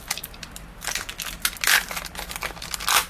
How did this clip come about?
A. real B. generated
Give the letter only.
A